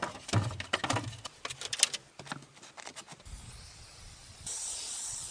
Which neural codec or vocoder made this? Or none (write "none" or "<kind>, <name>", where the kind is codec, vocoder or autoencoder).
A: none